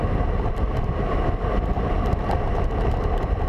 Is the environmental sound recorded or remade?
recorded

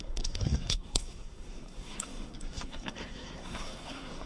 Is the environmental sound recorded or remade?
remade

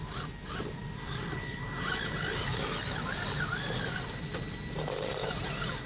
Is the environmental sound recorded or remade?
recorded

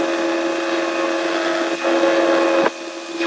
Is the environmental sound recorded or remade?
recorded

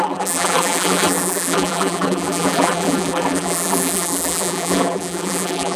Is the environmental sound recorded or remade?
remade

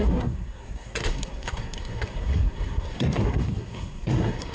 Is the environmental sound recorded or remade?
remade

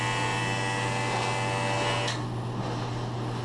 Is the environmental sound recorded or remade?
recorded